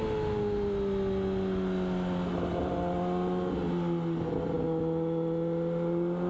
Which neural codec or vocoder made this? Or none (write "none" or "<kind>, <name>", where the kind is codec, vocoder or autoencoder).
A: none